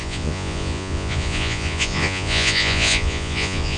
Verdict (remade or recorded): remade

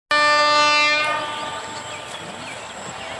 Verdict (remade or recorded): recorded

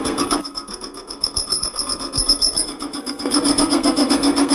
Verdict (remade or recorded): remade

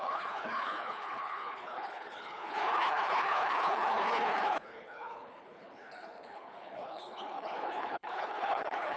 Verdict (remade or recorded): remade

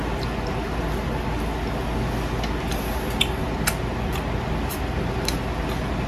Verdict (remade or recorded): recorded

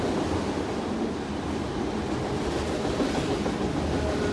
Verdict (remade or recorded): recorded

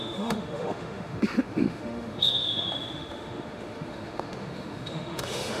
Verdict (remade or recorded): remade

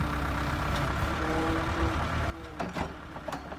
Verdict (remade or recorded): remade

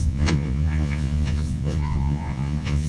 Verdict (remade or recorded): remade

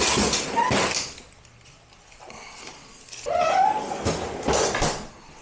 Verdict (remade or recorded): recorded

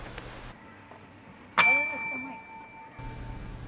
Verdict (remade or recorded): recorded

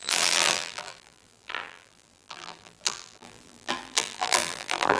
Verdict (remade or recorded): remade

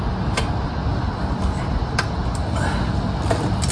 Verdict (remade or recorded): recorded